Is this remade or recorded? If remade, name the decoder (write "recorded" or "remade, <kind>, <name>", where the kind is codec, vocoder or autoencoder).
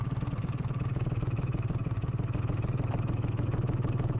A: recorded